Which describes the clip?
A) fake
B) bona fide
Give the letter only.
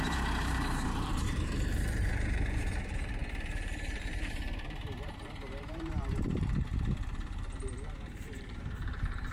A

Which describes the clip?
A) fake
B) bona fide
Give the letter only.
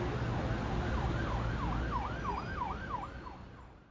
B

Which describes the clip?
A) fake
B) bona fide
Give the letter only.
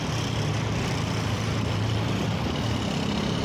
B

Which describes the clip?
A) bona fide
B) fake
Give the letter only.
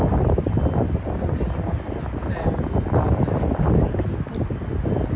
A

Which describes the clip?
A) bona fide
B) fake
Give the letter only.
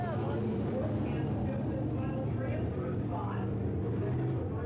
A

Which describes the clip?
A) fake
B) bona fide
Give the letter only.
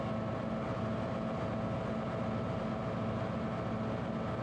B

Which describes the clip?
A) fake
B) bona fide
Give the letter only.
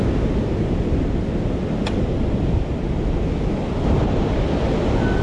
B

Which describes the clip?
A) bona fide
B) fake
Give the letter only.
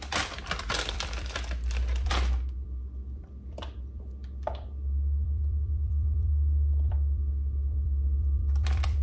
B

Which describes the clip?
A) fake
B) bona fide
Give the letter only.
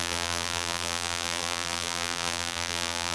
A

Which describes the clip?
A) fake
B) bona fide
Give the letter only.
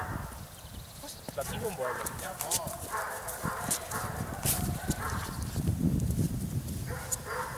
A